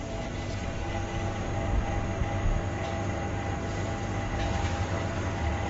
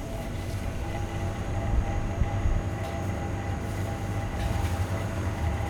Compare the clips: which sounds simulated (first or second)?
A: second